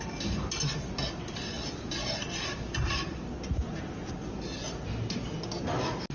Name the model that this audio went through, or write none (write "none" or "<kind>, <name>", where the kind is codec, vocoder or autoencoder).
none